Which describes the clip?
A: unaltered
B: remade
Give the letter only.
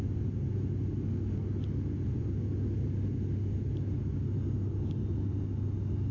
A